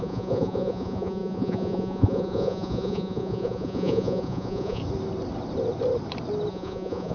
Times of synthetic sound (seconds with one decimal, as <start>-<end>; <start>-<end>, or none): 0.0-4.8; 6.5-7.1